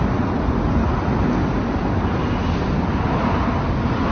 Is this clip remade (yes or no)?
no